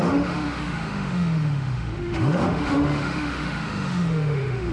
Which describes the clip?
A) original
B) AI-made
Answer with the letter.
B